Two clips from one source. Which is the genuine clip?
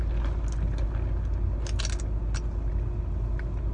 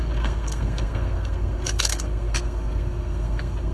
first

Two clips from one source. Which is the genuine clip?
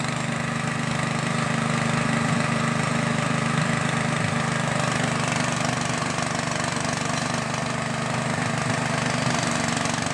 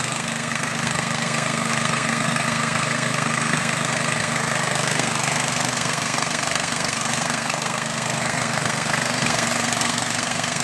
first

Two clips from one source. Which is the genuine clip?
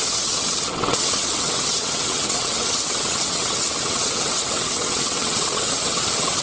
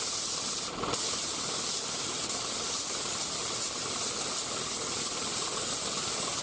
second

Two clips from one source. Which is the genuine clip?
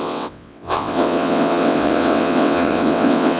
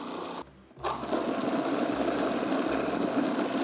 second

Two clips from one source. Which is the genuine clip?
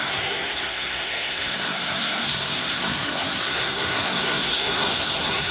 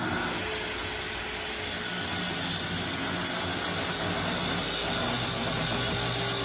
second